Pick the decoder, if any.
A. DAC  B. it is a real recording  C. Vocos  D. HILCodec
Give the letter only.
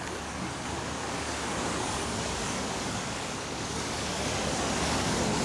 A